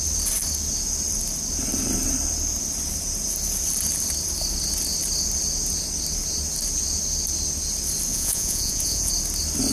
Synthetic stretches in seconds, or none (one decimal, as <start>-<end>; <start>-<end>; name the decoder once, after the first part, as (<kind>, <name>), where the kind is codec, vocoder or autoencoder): 8.1-9.1 (vocoder, Vocos)